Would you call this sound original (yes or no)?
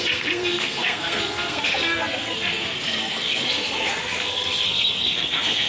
no